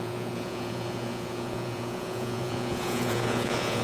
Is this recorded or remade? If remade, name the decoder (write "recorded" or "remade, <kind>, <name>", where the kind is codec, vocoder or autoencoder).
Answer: remade, vocoder, Vocos